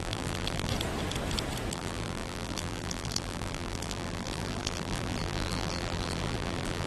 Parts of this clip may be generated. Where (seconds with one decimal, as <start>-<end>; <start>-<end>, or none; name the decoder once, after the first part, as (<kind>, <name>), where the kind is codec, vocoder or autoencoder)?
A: 0.0-0.7 (vocoder, BigVGAN v2); 1.7-6.9